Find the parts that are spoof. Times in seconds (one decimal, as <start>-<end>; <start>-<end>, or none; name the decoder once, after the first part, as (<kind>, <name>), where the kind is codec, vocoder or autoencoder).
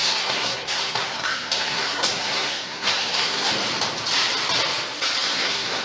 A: 0.0-3.5 (codec, SNAC); 5.2-5.8